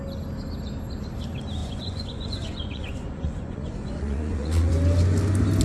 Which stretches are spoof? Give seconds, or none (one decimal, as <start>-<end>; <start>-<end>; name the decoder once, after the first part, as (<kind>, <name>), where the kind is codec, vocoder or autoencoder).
1.6-4.7 (vocoder, Vocos)